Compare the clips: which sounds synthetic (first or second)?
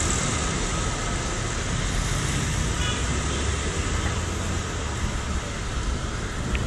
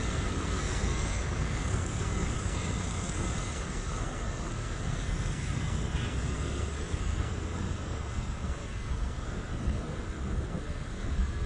second